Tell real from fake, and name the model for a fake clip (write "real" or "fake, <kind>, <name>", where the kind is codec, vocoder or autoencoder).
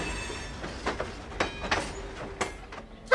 real